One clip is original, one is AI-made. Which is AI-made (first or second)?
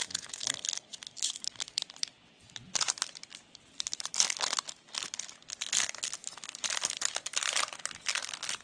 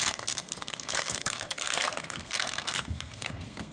second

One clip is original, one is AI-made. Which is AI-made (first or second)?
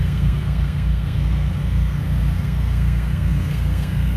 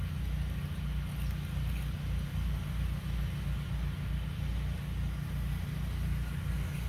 first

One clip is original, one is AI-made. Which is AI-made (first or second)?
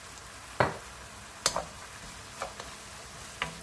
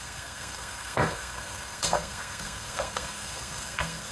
second